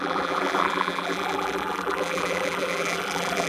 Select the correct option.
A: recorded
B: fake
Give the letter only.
B